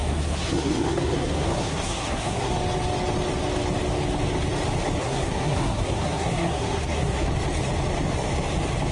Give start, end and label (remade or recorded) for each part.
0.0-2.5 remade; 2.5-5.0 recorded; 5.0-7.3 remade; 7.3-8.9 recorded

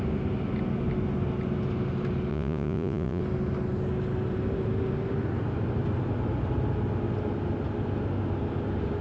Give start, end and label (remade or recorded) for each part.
0.0-2.3 recorded; 2.3-3.2 remade; 3.2-9.0 recorded

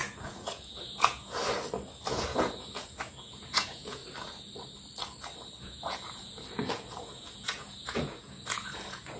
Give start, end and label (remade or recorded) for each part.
0.0-1.4 remade; 1.4-2.0 recorded; 2.0-4.0 remade; 4.0-5.6 recorded; 5.6-9.2 remade

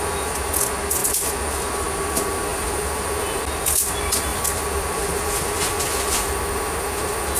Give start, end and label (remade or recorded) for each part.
0.0-2.5 recorded; 2.5-3.0 remade; 3.0-4.3 recorded; 4.3-6.0 remade; 6.0-7.4 recorded